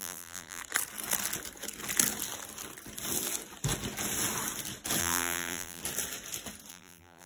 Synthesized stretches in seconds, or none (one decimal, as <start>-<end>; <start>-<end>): 0.0-0.6; 5.0-5.8; 6.7-7.3